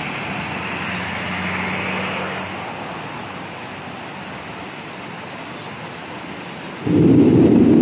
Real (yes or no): yes